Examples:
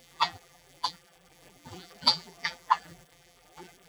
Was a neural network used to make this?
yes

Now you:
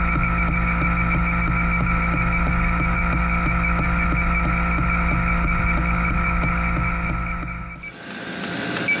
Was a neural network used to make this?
no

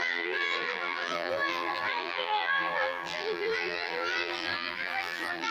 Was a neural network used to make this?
yes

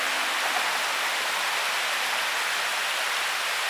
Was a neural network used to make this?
yes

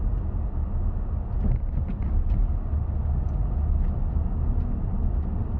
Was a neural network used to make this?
no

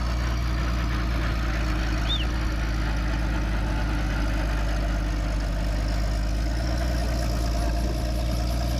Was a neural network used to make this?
no